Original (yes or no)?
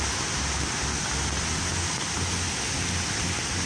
yes